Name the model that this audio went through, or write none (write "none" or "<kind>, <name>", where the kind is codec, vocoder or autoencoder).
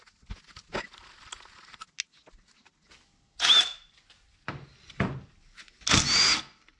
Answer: none